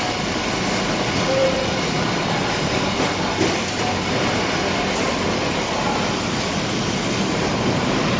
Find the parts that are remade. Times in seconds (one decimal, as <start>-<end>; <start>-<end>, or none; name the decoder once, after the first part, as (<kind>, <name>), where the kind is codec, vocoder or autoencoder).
1.4-2.8 (vocoder, BigVGAN v2)